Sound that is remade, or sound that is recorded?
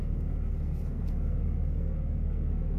remade